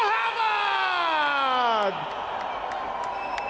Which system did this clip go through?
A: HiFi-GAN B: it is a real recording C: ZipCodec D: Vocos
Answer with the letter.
B